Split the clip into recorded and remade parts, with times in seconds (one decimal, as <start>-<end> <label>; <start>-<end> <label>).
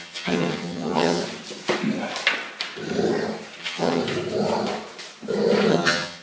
0.0-1.2 remade; 1.2-3.6 recorded; 3.6-4.0 remade; 4.0-5.7 recorded; 5.7-6.2 remade